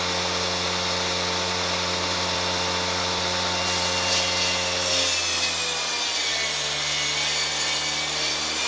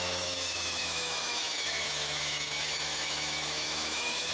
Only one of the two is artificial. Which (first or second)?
second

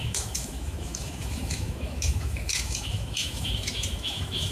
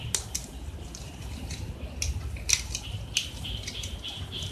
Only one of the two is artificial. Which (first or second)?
first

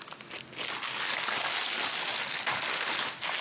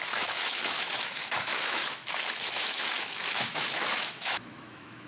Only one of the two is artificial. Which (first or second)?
second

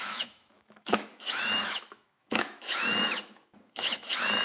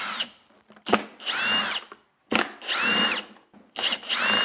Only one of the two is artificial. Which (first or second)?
first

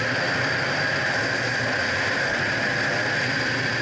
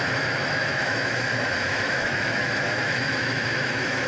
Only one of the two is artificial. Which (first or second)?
second